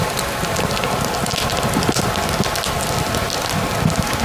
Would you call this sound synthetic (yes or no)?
no